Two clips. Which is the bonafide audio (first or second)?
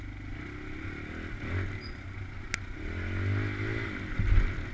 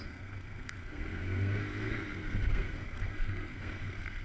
first